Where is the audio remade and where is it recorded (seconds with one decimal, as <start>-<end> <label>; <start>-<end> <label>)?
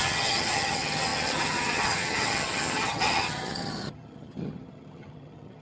0.0-5.6 remade